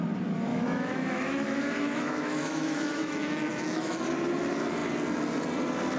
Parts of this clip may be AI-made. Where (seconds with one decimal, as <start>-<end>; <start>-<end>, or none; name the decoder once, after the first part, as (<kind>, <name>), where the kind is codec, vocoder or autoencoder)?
0.5-4.1 (autoencoder, DAC-VAE)